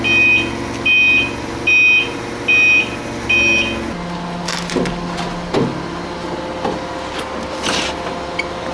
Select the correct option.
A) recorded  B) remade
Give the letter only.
A